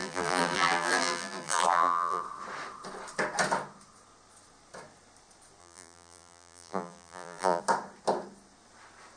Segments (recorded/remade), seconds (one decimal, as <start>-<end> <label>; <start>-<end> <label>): 0.0-2.2 remade; 2.2-5.6 recorded; 5.6-7.6 remade; 7.6-9.2 recorded